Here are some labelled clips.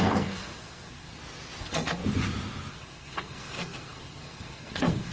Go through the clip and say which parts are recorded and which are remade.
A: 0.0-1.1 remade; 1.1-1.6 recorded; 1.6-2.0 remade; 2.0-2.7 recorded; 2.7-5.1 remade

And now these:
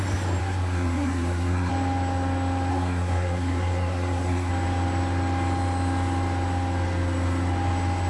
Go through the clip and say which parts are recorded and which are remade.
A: 0.0-0.4 recorded; 0.4-1.7 remade; 1.7-2.7 recorded; 2.7-4.5 remade; 4.5-8.1 recorded

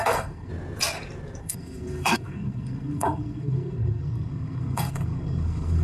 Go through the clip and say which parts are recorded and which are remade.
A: 0.0-0.5 remade; 0.5-1.4 recorded; 1.4-5.8 remade

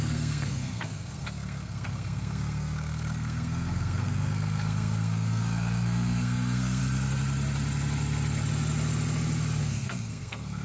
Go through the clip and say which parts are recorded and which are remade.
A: 0.0-6.8 remade; 6.8-9.6 recorded; 9.6-10.6 remade

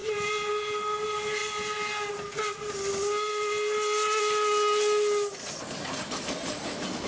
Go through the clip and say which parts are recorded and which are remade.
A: 0.0-7.1 recorded